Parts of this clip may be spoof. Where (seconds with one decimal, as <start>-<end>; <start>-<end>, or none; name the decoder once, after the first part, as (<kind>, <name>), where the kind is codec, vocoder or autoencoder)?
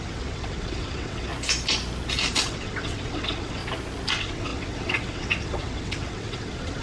0.0-1.3 (vocoder, WaveNeXt); 2.4-3.6; 4.1-6.8